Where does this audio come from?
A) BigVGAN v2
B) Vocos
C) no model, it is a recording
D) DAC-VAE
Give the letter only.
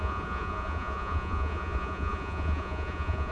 B